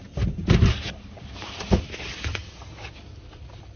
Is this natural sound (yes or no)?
yes